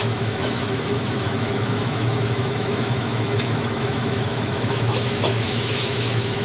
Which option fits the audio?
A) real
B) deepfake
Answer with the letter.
B